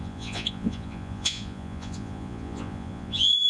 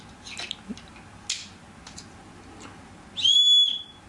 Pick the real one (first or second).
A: second